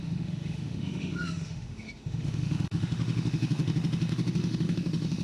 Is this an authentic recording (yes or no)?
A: no